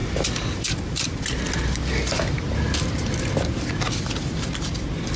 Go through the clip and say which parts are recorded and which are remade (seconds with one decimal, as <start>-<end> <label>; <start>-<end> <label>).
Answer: 0.0-5.2 recorded